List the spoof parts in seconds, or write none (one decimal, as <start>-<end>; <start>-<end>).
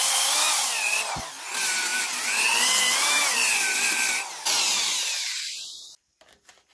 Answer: none